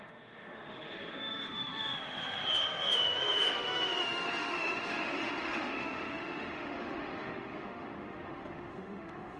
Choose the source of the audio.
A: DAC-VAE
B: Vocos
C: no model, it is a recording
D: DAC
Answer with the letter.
A